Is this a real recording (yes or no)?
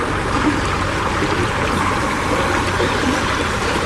yes